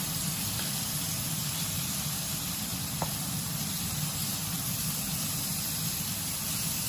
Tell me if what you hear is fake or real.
fake